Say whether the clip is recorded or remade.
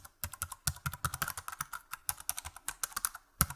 recorded